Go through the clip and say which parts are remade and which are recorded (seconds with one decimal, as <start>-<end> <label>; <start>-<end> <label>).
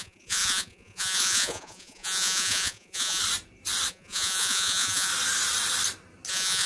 0.0-3.2 remade; 3.2-3.9 recorded; 3.9-5.1 remade; 5.1-6.3 recorded; 6.3-6.7 remade